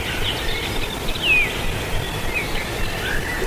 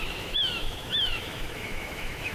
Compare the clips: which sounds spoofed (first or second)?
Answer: second